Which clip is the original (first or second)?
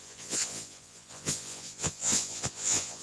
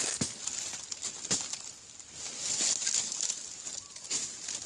second